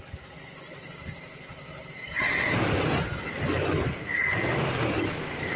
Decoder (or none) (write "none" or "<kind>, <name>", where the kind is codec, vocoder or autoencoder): none